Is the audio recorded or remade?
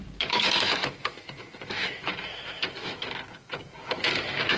remade